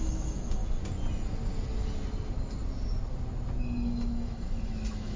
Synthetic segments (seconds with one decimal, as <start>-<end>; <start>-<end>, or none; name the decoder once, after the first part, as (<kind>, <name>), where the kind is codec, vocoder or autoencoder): 0.0-0.6 (autoencoder, DAC-VAE); 3.6-5.2

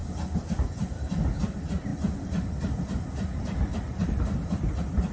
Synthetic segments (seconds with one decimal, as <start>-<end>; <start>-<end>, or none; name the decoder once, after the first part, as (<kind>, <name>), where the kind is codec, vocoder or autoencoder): none

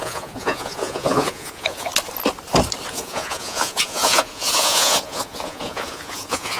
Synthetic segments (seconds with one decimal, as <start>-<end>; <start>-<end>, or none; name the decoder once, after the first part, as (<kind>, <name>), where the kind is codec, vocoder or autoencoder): 0.0-1.9 (vocoder, Vocos); 2.9-6.6

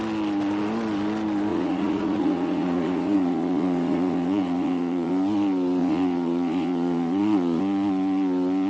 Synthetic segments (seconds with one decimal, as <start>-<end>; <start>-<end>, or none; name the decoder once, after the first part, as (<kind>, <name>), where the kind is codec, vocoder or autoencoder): 1.5-5.1 (vocoder, Vocos); 5.8-7.6

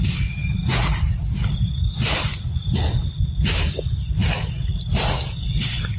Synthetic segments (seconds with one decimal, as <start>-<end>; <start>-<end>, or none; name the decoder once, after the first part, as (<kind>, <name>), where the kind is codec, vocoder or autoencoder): none

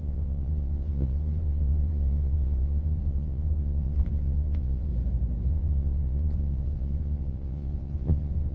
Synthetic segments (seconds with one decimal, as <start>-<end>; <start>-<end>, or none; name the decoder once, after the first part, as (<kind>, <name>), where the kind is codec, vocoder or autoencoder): 0.0-4.9 (vocoder, Vocos); 5.5-8.5

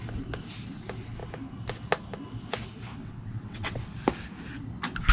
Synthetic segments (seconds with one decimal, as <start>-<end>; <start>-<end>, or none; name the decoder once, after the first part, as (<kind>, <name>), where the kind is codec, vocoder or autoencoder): 3.0-3.8 (vocoder, WaveNeXt)